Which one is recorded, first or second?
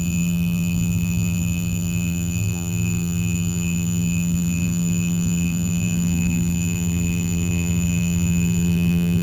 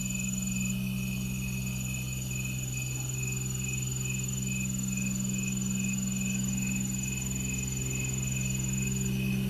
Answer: second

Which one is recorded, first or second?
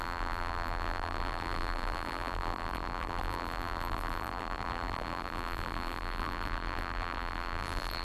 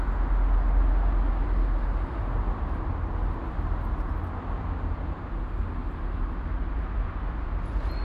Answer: second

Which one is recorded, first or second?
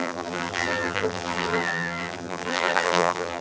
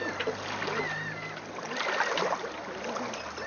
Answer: second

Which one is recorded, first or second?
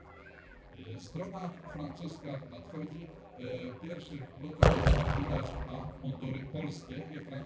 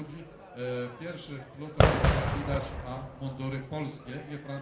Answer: second